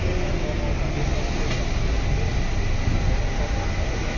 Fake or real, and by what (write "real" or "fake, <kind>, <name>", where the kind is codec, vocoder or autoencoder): real